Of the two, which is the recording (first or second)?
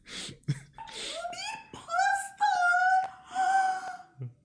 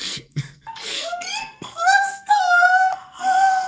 first